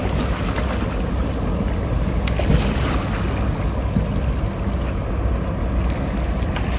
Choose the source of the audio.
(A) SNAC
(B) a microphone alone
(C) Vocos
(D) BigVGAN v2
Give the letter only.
B